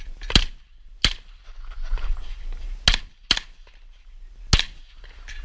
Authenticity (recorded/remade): recorded